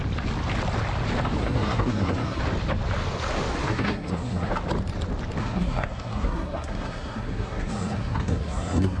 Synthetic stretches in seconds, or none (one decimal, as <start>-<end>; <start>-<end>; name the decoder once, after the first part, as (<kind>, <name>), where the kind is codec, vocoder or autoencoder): 1.4-2.4 (codec, SNAC); 3.6-4.5; 5.4-9.0

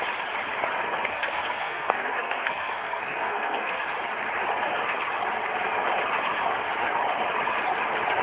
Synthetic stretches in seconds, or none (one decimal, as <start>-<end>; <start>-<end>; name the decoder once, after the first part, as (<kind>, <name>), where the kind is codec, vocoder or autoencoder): 1.1-3.8 (codec, SNAC)

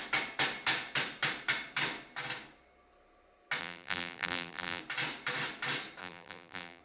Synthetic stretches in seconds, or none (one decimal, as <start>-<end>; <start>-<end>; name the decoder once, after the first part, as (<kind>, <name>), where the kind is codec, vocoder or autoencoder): 3.6-4.8 (vocoder, BigVGAN v2); 6.0-6.8